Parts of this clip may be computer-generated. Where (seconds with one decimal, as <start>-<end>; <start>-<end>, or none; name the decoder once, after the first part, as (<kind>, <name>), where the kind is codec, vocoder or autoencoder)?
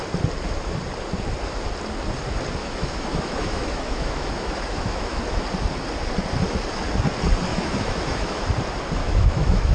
2.6-5.2 (autoencoder, DAC-VAE); 7.5-8.5; 9.0-9.7